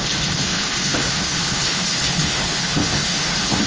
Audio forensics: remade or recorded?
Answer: remade